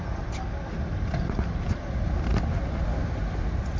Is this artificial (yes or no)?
no